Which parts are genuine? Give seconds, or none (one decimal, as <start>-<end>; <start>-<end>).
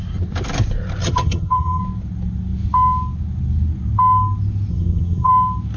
0.0-1.0; 1.8-4.7; 5.3-5.8